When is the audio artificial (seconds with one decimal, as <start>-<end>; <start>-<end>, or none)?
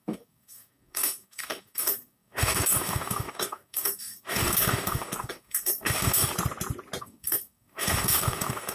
0.0-6.3; 7.0-8.7